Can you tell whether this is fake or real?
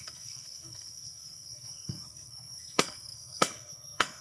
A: fake